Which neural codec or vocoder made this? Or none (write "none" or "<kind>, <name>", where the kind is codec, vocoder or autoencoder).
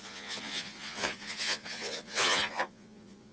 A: vocoder, Vocos